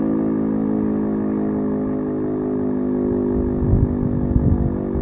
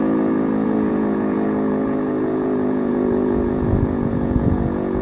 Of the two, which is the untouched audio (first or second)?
first